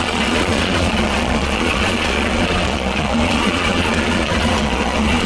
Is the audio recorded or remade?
remade